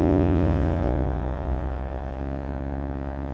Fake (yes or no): yes